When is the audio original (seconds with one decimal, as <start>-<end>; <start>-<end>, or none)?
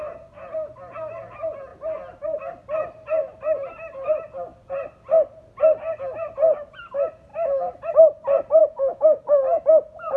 0.0-8.6; 9.2-10.2